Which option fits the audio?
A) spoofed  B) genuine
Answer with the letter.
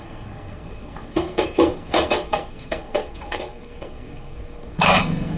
A